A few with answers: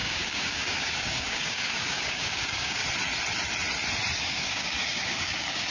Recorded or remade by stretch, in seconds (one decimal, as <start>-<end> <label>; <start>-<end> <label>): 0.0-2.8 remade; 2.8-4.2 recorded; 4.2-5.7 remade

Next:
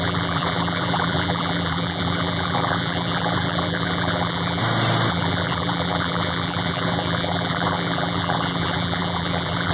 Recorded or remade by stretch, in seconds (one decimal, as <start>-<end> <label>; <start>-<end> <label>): 0.0-4.6 remade; 4.6-5.1 recorded; 5.1-9.7 remade

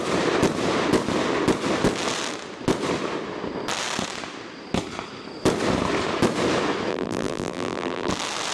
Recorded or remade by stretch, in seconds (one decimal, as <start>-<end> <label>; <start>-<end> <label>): 0.0-6.9 recorded; 6.9-8.1 remade; 8.1-8.5 recorded